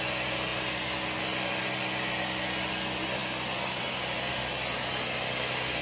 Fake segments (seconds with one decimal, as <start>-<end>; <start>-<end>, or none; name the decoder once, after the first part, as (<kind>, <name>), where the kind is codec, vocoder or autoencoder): none